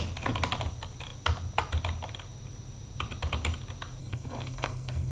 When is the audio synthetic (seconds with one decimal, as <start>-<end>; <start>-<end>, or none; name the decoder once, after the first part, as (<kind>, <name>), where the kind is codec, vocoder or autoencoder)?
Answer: 4.0-5.1 (codec, SNAC)